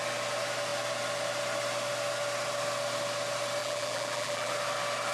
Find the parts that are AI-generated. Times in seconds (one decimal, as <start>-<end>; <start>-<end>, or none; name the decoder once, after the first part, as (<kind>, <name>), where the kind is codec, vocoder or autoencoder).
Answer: 3.6-4.5 (vocoder, BigVGAN v2)